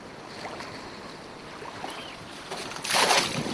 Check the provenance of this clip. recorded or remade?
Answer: recorded